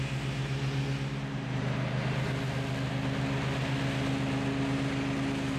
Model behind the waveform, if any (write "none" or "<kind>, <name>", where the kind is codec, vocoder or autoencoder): none